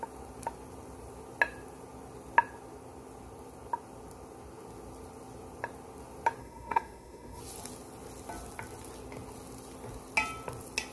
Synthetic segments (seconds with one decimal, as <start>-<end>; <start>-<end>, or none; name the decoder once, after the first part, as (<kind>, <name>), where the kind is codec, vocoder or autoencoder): 6.4-7.4 (codec, SNAC)